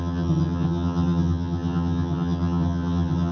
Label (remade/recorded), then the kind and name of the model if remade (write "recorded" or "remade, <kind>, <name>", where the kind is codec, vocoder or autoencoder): remade, vocoder, HiFi-GAN